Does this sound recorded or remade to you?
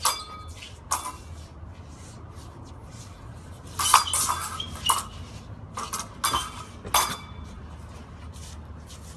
recorded